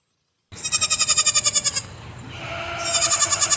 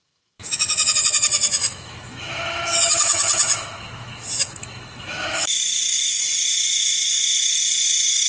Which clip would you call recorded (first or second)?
first